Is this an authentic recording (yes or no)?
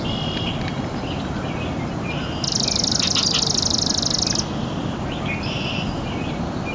yes